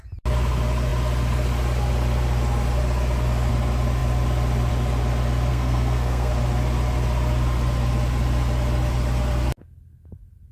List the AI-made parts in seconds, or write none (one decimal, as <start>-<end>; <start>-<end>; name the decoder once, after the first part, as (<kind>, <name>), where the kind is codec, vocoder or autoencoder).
5.5-6.3 (codec, SNAC)